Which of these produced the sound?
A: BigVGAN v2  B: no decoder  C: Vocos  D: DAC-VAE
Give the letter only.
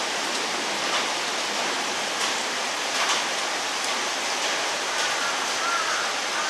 B